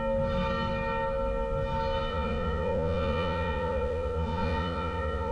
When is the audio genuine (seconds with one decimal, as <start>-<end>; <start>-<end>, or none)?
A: 0.0-2.1